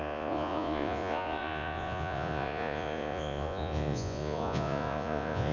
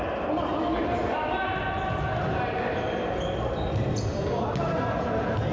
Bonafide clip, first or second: second